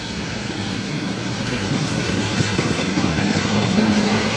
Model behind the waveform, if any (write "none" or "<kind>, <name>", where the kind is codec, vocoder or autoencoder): codec, SNAC